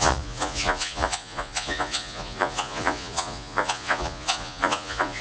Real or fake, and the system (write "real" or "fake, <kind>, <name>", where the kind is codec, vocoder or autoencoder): fake, vocoder, Vocos